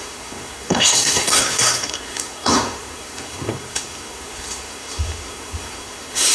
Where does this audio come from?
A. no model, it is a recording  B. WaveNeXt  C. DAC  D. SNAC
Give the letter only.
D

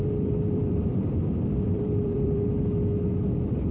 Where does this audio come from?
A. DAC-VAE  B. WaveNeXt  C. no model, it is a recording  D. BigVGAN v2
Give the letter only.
D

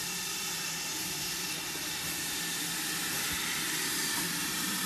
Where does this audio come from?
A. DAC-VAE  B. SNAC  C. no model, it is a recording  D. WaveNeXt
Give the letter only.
C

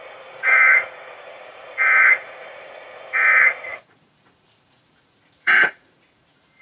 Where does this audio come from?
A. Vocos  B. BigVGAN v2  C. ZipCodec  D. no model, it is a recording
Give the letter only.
A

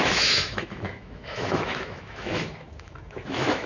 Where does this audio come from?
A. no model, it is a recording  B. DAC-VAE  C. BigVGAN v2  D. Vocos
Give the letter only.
B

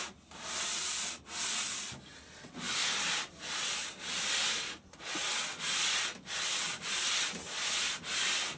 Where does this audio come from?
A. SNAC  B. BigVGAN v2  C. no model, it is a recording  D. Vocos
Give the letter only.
C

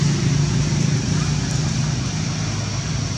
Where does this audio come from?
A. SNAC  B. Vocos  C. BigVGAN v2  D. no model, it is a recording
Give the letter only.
D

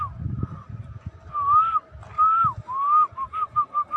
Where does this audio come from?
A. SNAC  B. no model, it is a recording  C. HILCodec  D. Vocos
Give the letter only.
B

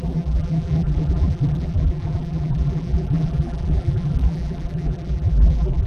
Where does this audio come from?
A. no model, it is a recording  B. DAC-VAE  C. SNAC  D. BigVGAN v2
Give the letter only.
D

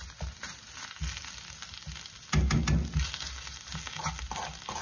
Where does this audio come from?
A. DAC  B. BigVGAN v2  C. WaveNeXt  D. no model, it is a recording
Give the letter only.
D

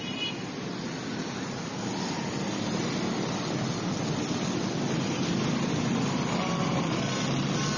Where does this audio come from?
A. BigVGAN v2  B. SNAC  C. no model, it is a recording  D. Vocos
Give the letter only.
C